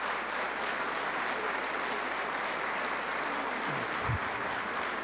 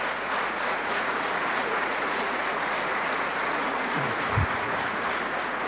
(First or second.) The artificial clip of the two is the second